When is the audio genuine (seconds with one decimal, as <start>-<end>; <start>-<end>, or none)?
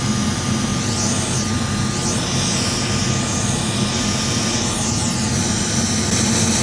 0.0-6.6